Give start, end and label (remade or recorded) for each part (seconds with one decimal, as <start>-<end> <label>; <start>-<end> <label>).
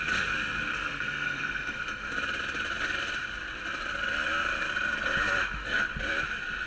0.0-0.7 recorded; 0.7-2.1 remade; 2.1-6.7 recorded